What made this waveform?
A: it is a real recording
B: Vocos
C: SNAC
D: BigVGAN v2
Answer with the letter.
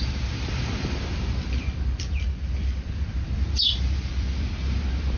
D